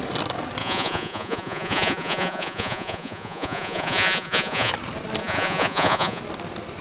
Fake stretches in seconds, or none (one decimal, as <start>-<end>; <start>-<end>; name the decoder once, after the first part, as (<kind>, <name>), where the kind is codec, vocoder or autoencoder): 0.6-4.7 (vocoder, Vocos); 5.2-6.2